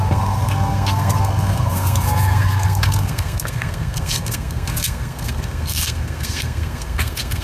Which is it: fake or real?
fake